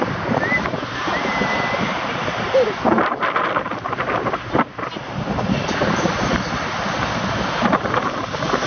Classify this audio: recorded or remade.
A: recorded